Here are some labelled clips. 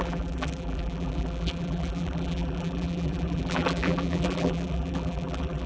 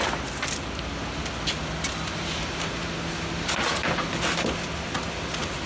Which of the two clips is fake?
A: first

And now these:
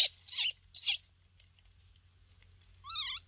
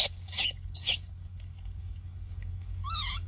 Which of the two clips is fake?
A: second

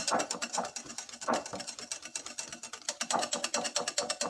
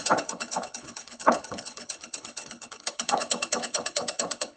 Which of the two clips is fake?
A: second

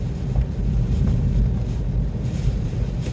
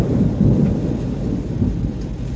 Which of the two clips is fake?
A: first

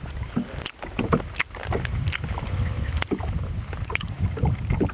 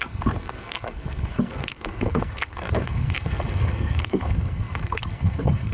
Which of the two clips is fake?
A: second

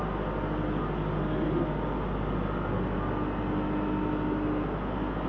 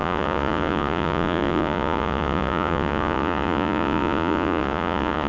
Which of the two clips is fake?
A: second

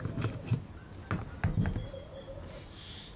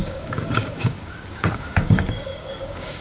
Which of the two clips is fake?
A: second